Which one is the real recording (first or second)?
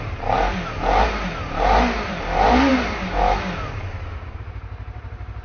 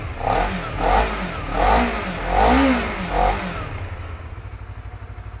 second